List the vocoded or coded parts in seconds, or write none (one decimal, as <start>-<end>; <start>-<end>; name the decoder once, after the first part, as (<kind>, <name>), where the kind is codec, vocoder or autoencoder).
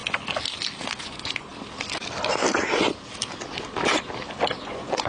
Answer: 1.0-1.5 (vocoder, Vocos); 4.6-5.1